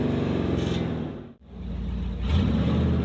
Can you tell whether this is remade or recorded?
recorded